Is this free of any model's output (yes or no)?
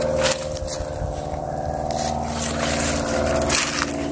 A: yes